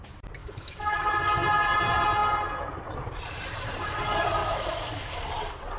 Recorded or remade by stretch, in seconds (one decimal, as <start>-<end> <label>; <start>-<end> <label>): 0.0-0.4 recorded; 0.4-1.0 remade; 1.0-4.4 recorded; 4.4-5.2 remade; 5.2-5.8 recorded